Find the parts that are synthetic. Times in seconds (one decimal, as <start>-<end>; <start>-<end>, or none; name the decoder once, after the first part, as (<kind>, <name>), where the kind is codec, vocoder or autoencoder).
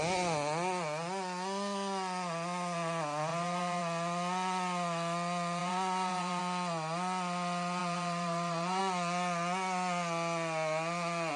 3.3-3.8 (vocoder, BigVGAN v2); 5.6-6.4; 7.8-8.8